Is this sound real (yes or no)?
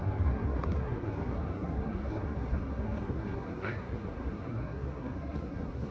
no